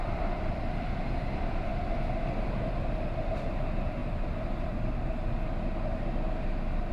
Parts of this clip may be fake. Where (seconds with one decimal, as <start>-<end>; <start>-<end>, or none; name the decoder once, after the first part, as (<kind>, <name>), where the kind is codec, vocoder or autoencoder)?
0.0-1.7 (vocoder, BigVGAN v2); 2.3-4.0